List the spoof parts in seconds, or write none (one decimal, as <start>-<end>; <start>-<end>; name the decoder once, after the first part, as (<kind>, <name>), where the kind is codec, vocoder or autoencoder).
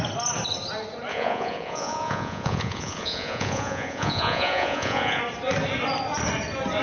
1.1-5.2 (vocoder, Vocos)